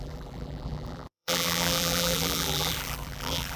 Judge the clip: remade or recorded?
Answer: remade